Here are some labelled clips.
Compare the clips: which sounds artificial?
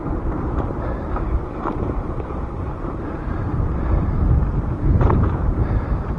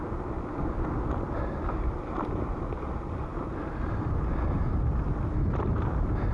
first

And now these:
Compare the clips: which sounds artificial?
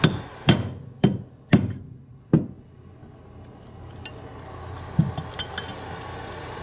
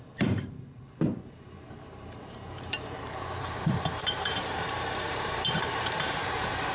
second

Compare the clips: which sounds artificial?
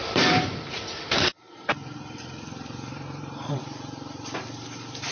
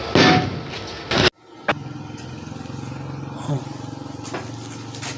first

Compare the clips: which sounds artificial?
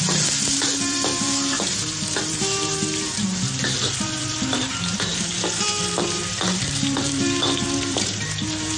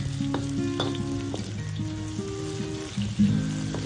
first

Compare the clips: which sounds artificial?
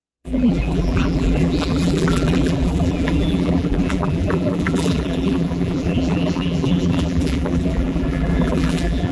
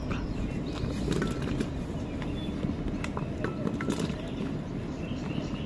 first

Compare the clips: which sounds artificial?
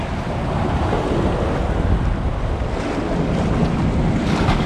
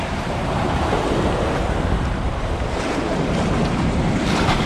second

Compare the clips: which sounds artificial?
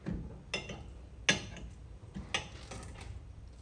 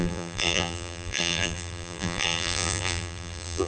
second